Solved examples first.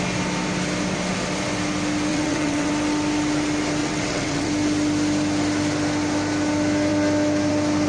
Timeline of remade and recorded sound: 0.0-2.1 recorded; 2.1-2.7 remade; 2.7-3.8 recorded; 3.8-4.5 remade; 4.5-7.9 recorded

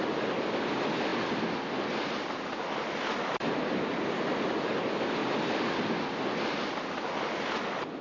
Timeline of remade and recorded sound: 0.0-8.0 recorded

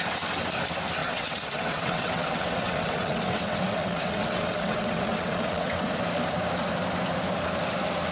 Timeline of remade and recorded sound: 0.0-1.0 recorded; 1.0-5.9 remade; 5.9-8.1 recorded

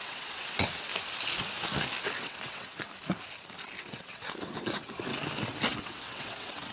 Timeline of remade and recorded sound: 0.0-0.9 remade; 0.9-2.2 recorded; 2.2-2.9 remade; 2.9-3.8 recorded; 3.8-5.1 remade; 5.1-5.7 recorded; 5.7-6.7 remade

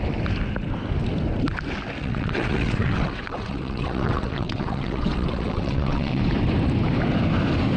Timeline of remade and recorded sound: 0.0-2.0 recorded; 2.0-6.2 remade; 6.2-7.8 recorded